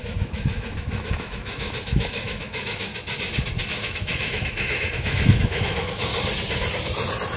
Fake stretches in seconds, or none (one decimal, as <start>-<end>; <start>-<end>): 0.0-2.9; 3.6-6.1